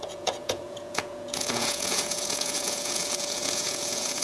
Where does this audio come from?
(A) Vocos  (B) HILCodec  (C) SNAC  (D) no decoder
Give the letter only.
A